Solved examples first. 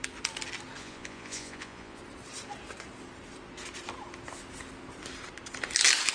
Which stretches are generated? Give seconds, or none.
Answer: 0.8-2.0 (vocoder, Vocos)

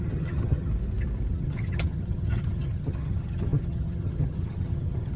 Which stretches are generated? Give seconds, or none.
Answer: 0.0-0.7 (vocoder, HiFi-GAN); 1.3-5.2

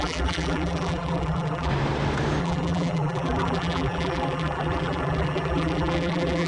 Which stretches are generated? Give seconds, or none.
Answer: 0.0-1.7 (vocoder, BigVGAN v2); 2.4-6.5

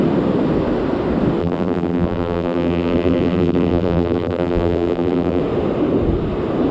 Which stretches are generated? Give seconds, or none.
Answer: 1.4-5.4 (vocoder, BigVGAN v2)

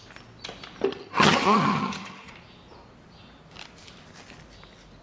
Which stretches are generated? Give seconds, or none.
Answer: 0.9-2.3 (vocoder, HiFi-GAN)